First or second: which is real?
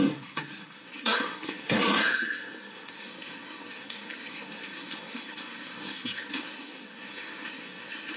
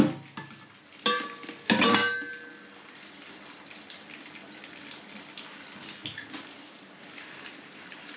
second